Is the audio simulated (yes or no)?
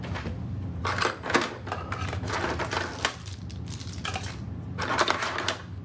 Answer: no